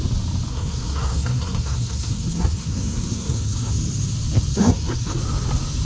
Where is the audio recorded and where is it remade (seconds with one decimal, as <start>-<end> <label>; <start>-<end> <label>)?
0.0-0.5 recorded; 0.5-3.7 remade; 3.7-4.5 recorded; 4.5-5.2 remade; 5.2-5.8 recorded